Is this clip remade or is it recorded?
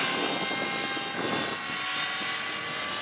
recorded